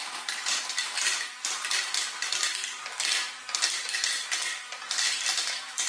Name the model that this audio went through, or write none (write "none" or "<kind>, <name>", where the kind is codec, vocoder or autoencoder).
none